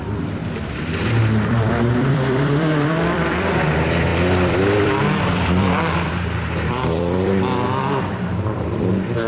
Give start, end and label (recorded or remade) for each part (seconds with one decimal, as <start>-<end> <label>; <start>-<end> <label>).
0.0-0.4 remade; 0.4-1.2 recorded; 1.2-9.3 remade